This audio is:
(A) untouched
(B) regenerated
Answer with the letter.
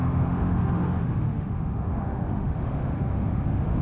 B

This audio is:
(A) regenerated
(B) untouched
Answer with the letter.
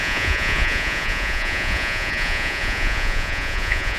A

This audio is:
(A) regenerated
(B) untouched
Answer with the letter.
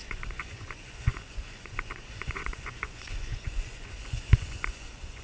A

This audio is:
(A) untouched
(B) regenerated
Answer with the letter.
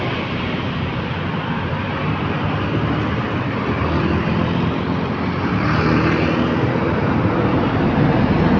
A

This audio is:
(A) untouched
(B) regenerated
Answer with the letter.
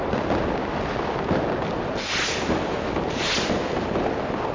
A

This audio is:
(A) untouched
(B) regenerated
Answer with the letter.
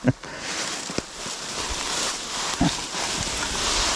A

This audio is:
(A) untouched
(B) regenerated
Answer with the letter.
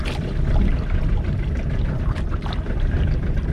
B